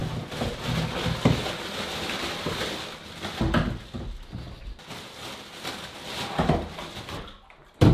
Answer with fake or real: real